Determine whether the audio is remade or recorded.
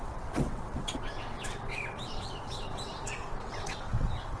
remade